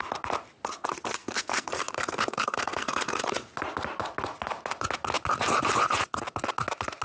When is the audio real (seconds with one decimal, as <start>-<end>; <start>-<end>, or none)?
0.0-1.2; 3.2-7.0